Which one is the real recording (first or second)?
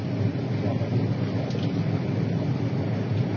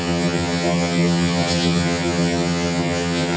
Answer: first